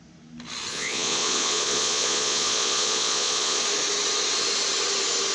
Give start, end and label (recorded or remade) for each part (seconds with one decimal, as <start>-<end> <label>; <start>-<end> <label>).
0.0-0.7 recorded; 0.7-3.6 remade; 3.6-5.3 recorded